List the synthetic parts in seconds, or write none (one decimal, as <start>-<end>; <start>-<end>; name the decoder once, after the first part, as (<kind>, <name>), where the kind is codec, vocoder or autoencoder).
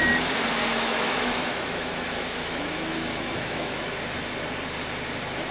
0.7-4.0 (autoencoder, DAC-VAE)